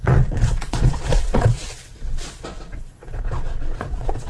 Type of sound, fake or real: fake